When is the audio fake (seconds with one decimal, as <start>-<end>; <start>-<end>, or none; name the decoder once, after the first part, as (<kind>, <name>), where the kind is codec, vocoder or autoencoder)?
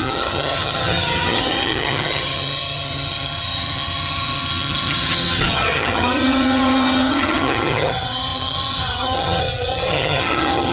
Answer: 0.0-10.7 (vocoder, HiFi-GAN)